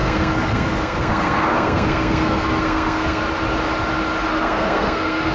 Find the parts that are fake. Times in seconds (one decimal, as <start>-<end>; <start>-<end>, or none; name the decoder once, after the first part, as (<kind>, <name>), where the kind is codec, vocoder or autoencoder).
0.0-3.2 (codec, SNAC); 4.3-5.3